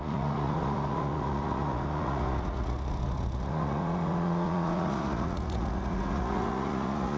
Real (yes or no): no